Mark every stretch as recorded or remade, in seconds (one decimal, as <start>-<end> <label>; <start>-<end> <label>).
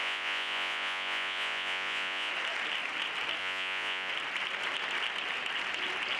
0.0-2.3 remade; 2.3-3.4 recorded; 3.4-4.1 remade; 4.1-6.2 recorded